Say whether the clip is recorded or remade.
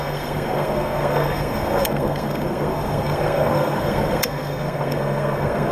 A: remade